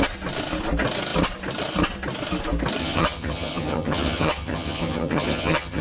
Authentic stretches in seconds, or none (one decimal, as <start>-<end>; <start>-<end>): 0.0-2.8